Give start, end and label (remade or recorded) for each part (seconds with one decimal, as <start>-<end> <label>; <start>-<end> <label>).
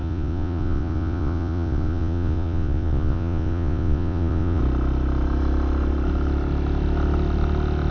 0.0-4.6 remade; 4.6-7.9 recorded